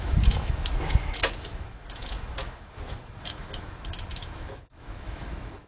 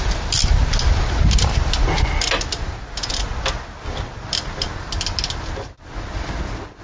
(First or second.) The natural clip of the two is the second